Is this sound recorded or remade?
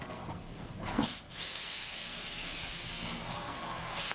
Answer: remade